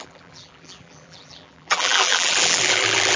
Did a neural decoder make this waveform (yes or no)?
yes